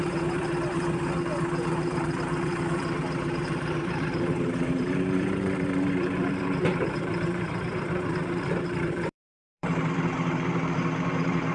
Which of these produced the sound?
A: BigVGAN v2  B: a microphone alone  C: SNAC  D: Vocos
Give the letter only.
A